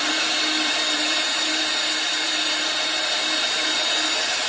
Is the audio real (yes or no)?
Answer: no